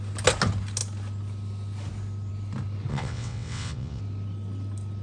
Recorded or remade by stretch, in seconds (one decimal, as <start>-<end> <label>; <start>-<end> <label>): 0.0-2.9 recorded; 2.9-4.0 remade; 4.0-5.0 recorded